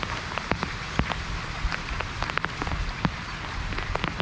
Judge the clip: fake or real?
fake